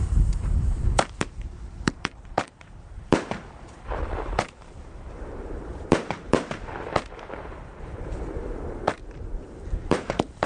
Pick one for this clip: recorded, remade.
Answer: remade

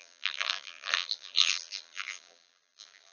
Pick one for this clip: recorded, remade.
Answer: remade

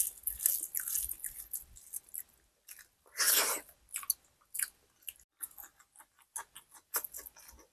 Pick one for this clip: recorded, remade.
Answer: recorded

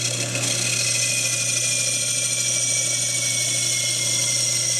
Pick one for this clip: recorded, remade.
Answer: recorded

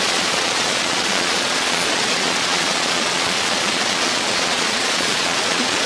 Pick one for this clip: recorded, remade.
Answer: remade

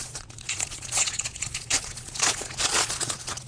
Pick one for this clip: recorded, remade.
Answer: remade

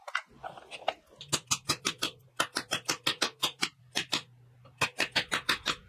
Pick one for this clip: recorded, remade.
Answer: recorded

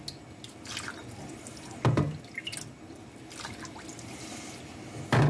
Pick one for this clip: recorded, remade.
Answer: recorded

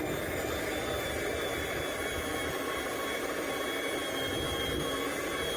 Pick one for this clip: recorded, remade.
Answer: recorded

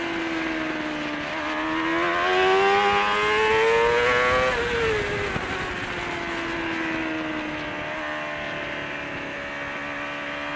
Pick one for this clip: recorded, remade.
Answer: recorded